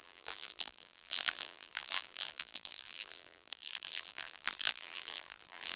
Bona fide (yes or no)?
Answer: no